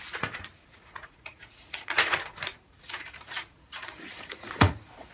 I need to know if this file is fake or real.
fake